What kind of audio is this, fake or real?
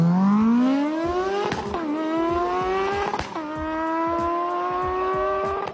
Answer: real